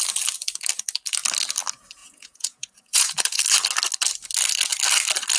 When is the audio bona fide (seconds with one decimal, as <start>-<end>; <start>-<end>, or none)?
0.0-2.0; 3.4-5.4